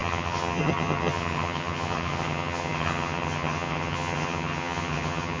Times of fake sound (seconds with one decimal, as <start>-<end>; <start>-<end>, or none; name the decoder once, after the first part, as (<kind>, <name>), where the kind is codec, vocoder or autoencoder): 0.0-5.4 (vocoder, HiFi-GAN)